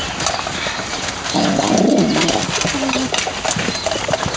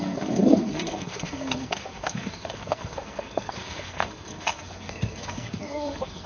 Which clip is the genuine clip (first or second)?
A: first